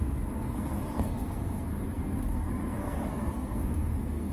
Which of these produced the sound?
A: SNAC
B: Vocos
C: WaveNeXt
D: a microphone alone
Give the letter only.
A